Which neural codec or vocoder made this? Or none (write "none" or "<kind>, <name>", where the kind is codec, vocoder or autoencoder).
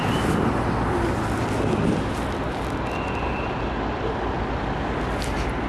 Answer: none